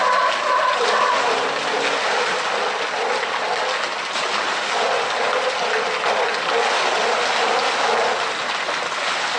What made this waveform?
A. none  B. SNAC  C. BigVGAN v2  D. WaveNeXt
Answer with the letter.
A